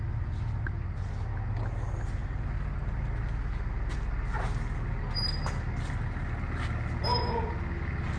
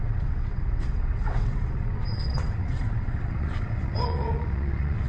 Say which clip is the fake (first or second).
second